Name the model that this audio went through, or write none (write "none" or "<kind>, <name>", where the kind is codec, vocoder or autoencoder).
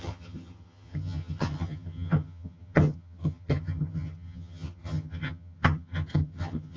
vocoder, HiFi-GAN